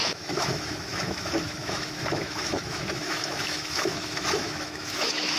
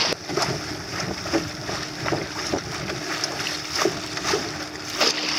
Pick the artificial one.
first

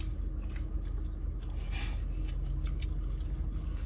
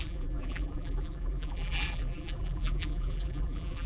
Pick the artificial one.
second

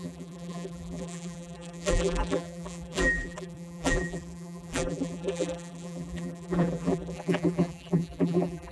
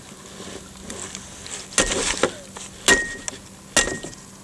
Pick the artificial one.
first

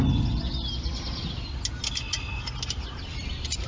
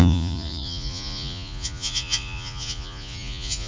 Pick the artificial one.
second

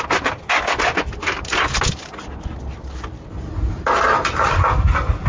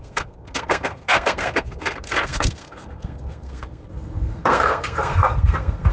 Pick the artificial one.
second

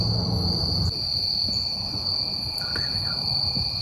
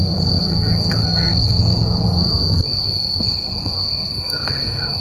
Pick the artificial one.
second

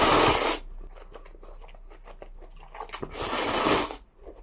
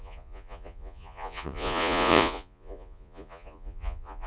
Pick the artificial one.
second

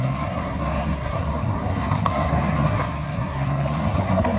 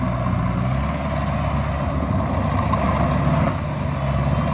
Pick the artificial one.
first